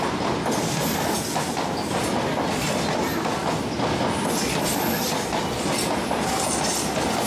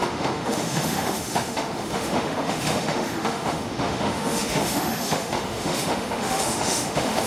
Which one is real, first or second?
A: first